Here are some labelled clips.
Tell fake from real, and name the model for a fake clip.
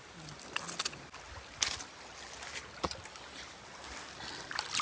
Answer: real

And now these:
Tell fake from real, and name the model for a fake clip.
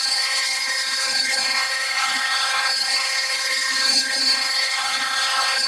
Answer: fake, codec, HILCodec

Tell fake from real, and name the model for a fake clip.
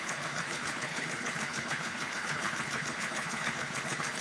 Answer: fake, codec, HILCodec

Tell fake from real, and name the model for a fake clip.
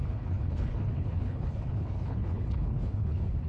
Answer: fake, codec, HILCodec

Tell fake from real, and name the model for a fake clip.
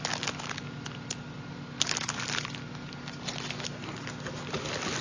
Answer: real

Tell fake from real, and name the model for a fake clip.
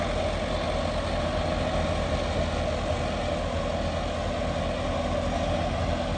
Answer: real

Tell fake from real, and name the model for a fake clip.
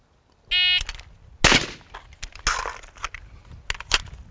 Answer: real